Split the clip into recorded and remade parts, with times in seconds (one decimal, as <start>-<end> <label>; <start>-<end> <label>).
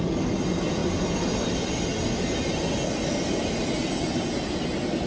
0.0-5.1 recorded